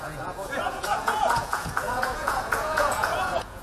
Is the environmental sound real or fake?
fake